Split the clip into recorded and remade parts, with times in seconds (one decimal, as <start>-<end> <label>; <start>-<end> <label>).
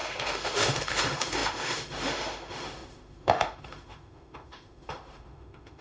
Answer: 0.0-5.8 remade